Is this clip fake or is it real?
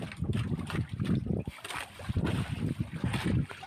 real